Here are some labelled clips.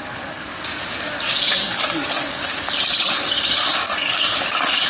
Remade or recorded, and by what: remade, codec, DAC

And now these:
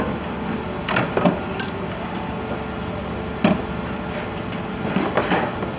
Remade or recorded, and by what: recorded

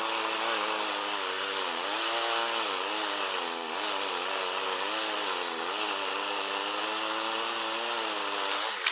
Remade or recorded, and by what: recorded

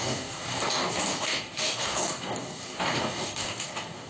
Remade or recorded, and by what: remade, codec, DAC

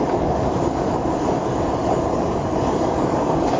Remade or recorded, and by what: remade, codec, DAC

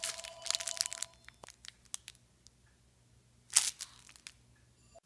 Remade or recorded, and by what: recorded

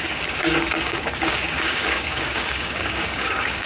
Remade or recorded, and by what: remade, codec, DAC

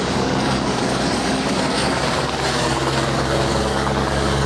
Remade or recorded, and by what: remade, codec, DAC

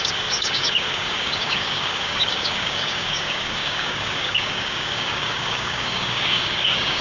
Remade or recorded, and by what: remade, codec, DAC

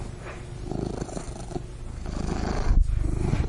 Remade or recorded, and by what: recorded